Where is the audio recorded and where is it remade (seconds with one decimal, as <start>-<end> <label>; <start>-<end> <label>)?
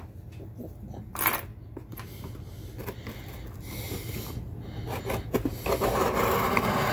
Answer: 0.0-6.9 recorded